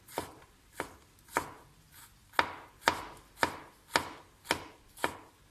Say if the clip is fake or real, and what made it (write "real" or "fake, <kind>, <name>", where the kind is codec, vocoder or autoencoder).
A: real